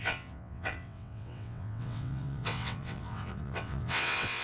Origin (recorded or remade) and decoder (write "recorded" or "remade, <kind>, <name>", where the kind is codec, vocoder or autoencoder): remade, vocoder, WaveNeXt